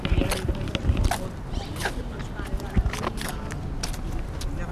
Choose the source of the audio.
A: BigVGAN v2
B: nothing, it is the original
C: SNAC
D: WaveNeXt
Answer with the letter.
B